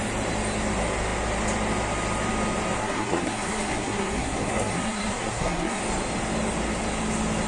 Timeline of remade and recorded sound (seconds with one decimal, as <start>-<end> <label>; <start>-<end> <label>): 0.0-2.8 recorded; 2.8-5.8 remade; 5.8-7.5 recorded

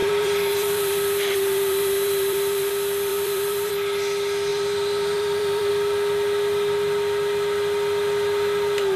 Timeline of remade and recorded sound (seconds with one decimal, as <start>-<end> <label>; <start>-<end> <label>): 0.0-2.7 remade; 2.7-3.1 recorded; 3.1-3.7 remade; 3.7-4.5 recorded; 4.5-5.7 remade; 5.7-9.0 recorded

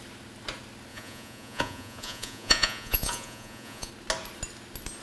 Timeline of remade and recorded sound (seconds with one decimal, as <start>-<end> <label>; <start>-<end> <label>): 0.0-0.9 recorded; 0.9-3.9 remade; 3.9-5.0 recorded

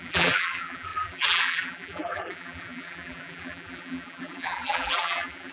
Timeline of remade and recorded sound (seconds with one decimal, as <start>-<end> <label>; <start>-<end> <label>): 0.0-5.5 remade